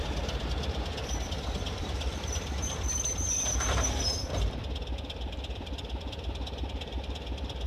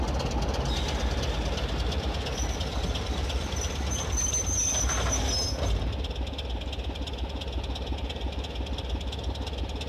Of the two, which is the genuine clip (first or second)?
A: second